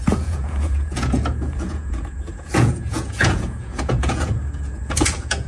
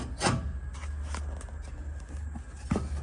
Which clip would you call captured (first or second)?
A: second